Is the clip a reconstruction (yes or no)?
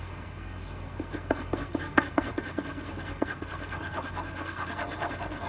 yes